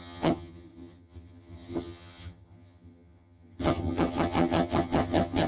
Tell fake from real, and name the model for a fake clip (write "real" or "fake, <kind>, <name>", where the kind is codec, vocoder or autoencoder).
fake, vocoder, HiFi-GAN